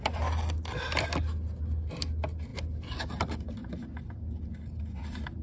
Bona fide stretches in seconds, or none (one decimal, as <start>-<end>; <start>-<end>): 0.0-5.4